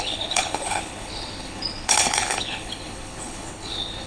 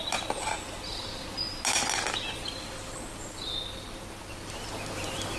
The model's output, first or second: first